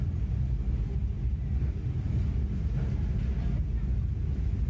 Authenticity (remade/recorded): recorded